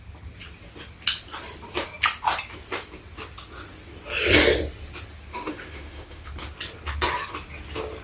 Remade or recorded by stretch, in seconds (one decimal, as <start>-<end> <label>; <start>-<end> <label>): 0.0-5.3 recorded; 5.3-6.3 remade; 6.3-8.0 recorded